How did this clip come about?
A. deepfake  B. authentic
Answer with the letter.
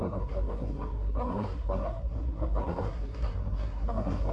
A